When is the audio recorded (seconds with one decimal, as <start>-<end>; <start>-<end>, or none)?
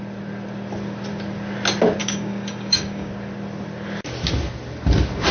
0.0-2.0; 3.1-5.3